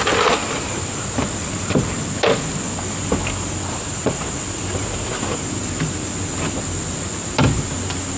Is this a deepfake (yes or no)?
no